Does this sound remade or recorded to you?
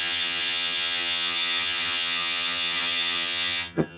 remade